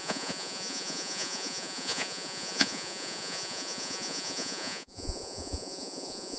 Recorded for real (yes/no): no